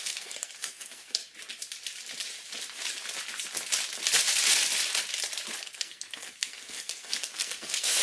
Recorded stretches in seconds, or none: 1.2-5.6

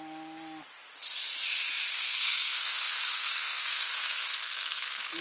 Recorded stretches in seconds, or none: 0.0-1.9